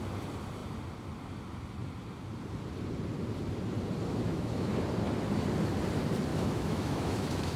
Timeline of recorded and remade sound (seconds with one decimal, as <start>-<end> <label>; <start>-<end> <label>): 0.0-4.1 recorded; 4.1-4.7 remade; 4.7-6.3 recorded; 6.3-7.6 remade